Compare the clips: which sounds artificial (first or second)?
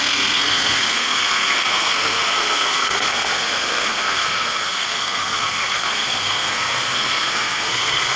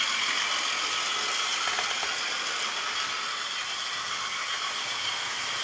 first